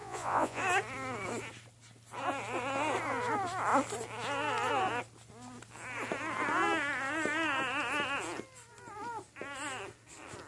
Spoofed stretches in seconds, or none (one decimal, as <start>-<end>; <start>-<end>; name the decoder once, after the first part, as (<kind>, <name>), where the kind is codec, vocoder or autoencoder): 0.0-0.6 (vocoder, Vocos)